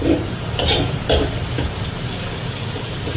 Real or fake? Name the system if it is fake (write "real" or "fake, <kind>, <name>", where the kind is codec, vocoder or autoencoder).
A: fake, vocoder, BigVGAN v2